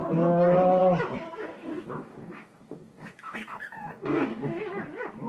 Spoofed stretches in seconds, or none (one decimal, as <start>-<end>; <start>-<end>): 1.4-4.6

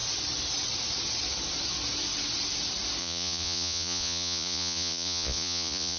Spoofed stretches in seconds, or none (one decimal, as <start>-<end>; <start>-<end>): 3.0-6.0

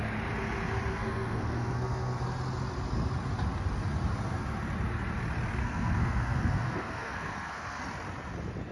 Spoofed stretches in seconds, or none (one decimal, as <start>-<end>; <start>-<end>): 0.9-2.2; 5.6-7.8

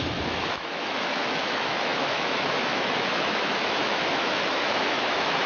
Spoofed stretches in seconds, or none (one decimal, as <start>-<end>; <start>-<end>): 0.0-5.5

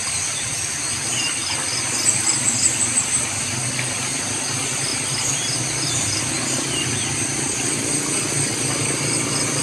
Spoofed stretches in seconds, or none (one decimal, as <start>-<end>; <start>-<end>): none

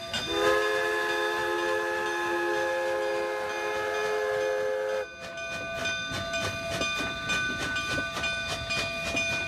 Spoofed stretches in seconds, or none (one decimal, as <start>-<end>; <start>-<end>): none

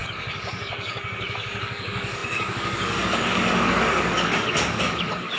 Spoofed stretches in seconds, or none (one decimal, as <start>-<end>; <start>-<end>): 0.0-5.4

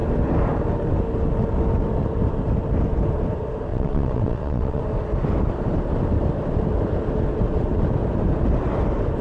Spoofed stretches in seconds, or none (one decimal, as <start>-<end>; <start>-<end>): 3.7-4.8